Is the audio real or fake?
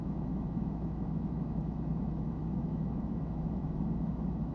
fake